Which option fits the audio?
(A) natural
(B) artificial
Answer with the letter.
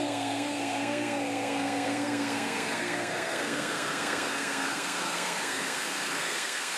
B